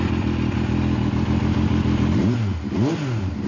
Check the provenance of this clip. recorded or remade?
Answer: recorded